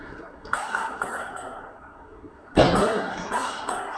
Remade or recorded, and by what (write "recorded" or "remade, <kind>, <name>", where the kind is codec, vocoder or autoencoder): remade, codec, SNAC